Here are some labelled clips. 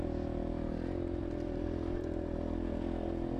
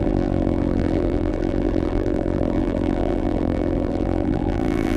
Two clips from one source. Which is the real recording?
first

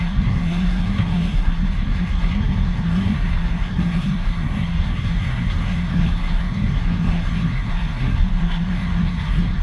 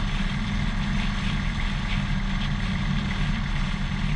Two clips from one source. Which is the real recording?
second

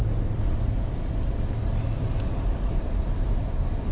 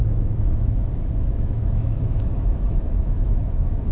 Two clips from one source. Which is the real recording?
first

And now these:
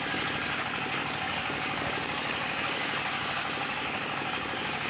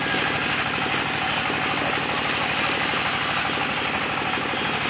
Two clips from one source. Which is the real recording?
second